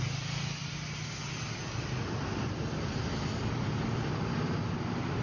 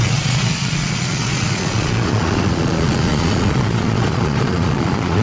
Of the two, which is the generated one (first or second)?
second